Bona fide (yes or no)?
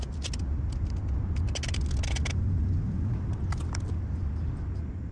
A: yes